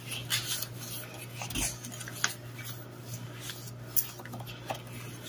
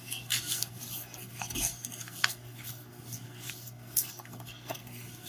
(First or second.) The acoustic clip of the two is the first